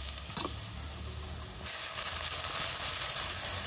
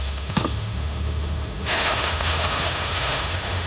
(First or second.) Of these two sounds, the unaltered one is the first